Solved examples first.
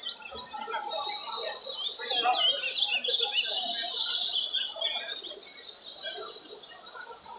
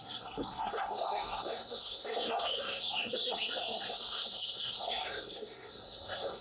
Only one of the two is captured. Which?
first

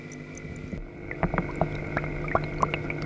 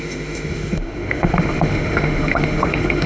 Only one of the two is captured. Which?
first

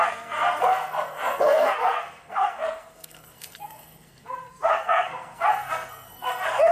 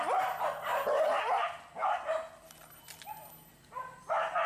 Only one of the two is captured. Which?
second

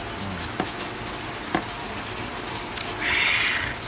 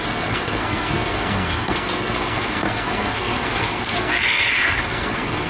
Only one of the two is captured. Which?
first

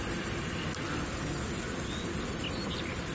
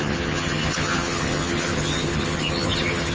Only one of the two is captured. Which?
first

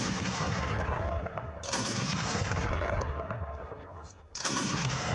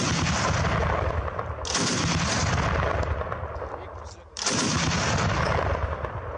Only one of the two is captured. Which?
second